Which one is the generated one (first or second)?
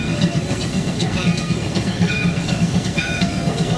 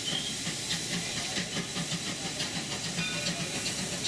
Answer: first